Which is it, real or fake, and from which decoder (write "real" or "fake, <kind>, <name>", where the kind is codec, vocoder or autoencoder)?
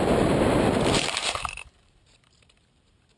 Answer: fake, vocoder, BigVGAN v2